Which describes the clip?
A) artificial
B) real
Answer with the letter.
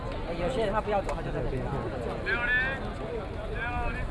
B